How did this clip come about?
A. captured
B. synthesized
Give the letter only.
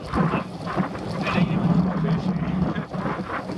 A